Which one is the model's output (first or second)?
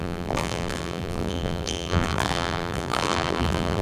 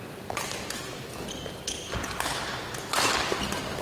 first